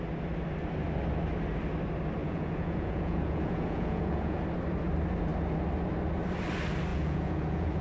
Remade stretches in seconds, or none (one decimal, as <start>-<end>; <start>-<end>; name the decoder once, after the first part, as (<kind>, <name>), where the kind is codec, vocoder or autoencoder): 2.2-4.4 (vocoder, Vocos); 6.9-7.8